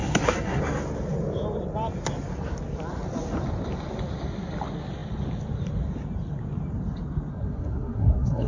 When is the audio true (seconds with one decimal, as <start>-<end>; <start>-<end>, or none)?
0.6-7.3

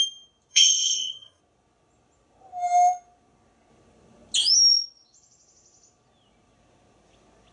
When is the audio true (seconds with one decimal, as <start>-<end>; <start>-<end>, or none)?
0.0-0.5; 1.4-7.5

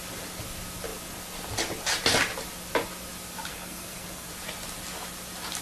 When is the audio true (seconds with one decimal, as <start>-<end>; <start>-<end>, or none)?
0.0-3.5; 4.3-5.6

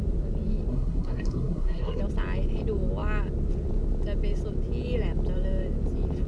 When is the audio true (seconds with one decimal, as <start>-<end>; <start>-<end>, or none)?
0.0-0.7; 2.0-6.3

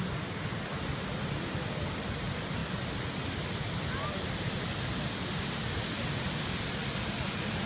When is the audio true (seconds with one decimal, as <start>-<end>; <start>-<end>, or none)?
0.0-7.7

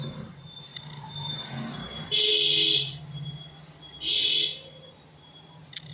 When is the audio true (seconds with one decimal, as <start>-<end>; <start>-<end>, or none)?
0.0-5.9

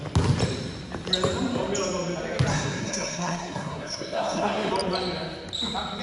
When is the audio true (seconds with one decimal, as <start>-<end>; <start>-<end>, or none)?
0.0-2.5; 4.7-6.0

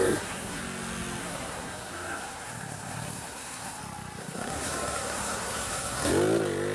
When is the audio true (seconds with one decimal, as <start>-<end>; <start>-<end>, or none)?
0.6-1.2; 3.8-4.2; 6.1-6.7